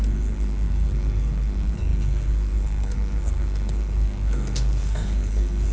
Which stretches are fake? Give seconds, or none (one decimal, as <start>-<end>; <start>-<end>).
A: 0.0-5.7